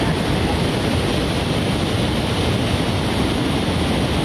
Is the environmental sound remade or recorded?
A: recorded